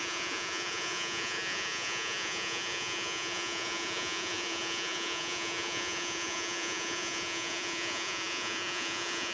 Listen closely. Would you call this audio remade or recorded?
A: remade